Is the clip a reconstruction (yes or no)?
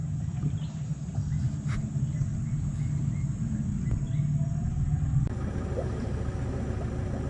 no